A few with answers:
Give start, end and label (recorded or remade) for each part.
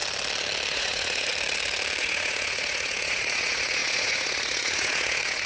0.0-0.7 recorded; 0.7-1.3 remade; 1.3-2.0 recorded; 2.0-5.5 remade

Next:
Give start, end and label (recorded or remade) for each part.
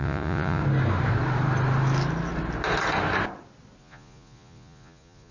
0.0-0.6 remade; 0.6-3.8 recorded; 3.8-5.3 remade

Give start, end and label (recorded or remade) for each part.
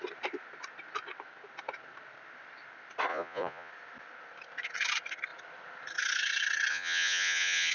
0.0-3.1 recorded; 3.1-3.7 remade; 3.7-6.7 recorded; 6.7-7.7 remade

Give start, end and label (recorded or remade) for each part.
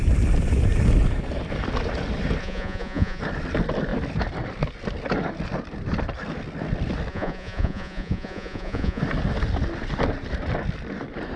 0.0-2.4 recorded; 2.4-3.2 remade; 3.2-7.1 recorded; 7.1-9.0 remade; 9.0-11.4 recorded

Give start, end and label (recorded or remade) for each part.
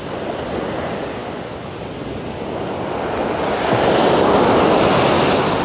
0.0-5.6 recorded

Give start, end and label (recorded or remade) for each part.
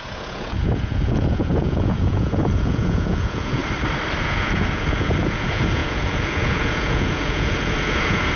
0.0-3.6 remade; 3.6-4.2 recorded; 4.2-8.4 remade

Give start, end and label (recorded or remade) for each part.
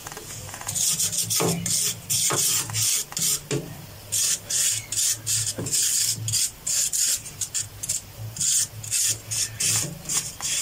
0.0-1.0 remade; 1.0-10.6 recorded